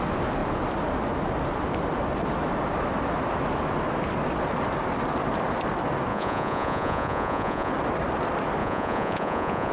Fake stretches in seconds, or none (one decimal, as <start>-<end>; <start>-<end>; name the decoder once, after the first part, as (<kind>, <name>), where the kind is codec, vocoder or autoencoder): 6.1-7.7 (vocoder, Vocos); 8.6-9.7